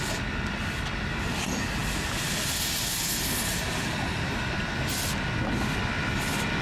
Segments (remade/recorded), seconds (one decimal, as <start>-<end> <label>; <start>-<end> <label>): 0.0-6.6 recorded